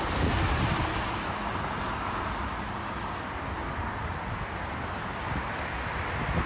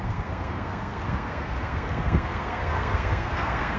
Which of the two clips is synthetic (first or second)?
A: second